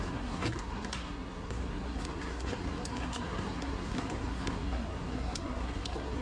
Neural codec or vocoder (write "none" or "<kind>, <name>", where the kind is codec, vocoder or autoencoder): codec, SNAC